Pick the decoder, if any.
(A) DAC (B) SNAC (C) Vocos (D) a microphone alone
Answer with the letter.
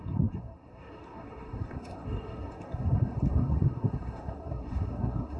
B